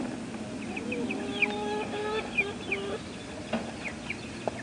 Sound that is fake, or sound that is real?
real